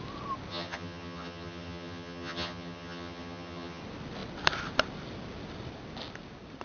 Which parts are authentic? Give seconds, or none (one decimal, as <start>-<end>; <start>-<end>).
0.0-0.5; 3.8-6.6